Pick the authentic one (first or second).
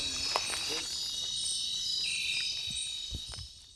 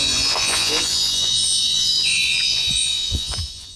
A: first